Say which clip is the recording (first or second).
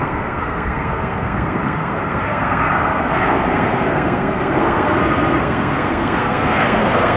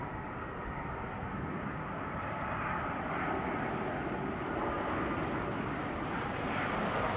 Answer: second